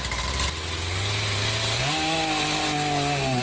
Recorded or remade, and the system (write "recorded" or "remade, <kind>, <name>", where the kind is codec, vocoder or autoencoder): recorded